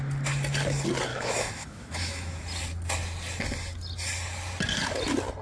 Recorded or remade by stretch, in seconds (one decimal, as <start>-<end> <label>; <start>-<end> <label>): 0.0-1.1 recorded; 1.1-2.4 remade; 2.4-5.4 recorded